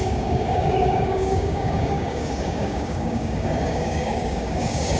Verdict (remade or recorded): remade